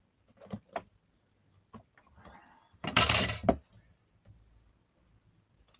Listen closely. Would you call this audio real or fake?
real